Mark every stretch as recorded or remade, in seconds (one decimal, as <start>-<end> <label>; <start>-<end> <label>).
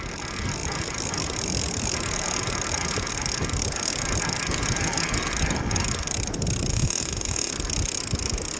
0.0-6.7 recorded; 6.7-7.5 remade; 7.5-8.6 recorded